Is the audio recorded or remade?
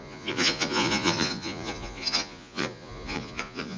remade